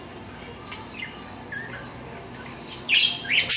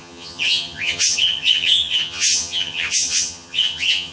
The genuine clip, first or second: first